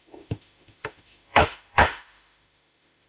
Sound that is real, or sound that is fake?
fake